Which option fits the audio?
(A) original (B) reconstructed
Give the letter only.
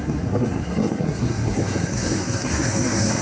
B